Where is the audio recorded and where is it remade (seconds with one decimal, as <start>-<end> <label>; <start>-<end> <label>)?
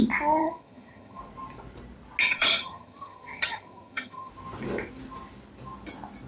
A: 0.0-0.4 recorded; 0.4-1.2 remade; 1.2-2.2 recorded; 2.2-4.3 remade; 4.3-6.3 recorded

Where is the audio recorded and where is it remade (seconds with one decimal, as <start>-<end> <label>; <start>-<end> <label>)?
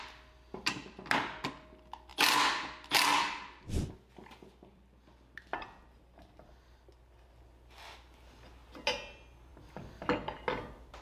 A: 0.0-11.0 recorded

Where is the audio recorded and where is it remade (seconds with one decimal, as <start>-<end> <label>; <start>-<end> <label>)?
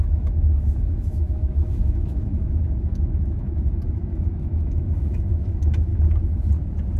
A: 0.0-5.9 remade; 5.9-7.0 recorded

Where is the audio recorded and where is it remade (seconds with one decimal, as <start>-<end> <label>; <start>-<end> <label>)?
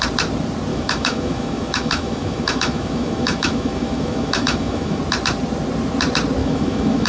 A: 0.0-0.7 recorded; 0.7-5.0 remade; 5.0-6.4 recorded; 6.4-7.1 remade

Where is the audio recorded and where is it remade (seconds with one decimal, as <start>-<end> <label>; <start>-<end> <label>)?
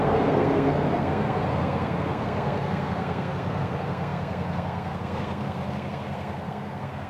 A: 0.0-7.1 remade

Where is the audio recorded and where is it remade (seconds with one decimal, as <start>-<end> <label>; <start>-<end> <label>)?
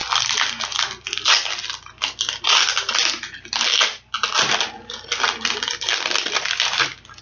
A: 0.0-7.2 recorded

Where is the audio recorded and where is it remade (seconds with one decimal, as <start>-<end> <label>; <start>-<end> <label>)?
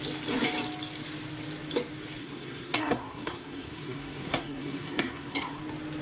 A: 0.0-2.2 recorded; 2.2-5.6 remade; 5.6-6.0 recorded